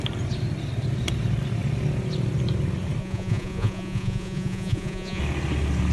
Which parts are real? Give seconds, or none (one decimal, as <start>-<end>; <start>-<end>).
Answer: 0.0-3.0; 5.2-5.9